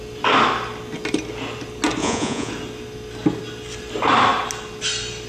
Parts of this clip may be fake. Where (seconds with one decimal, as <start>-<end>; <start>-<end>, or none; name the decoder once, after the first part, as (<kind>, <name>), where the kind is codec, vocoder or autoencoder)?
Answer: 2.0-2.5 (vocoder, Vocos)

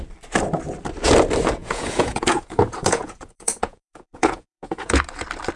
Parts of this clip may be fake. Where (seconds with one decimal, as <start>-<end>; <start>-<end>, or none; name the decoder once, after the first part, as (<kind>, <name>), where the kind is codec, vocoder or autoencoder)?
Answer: 1.6-5.0 (vocoder, Vocos)

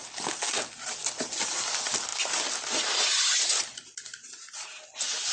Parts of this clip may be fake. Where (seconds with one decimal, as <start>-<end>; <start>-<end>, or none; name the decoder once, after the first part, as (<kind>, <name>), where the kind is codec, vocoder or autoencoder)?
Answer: none